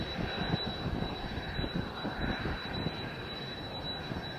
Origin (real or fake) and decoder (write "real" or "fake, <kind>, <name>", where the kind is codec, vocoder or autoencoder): fake, vocoder, BigVGAN v2